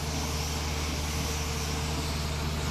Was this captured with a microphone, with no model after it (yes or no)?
yes